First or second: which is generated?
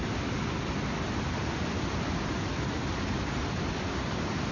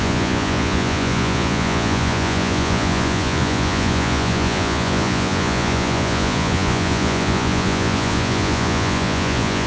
second